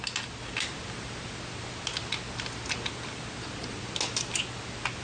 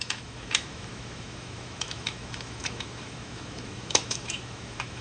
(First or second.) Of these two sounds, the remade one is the second